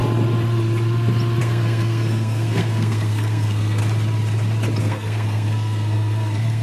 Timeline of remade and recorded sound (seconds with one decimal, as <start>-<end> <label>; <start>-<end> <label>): 0.0-1.4 recorded; 1.4-3.8 remade; 3.8-4.8 recorded; 4.8-6.6 remade